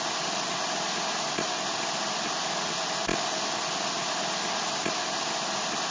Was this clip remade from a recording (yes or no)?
no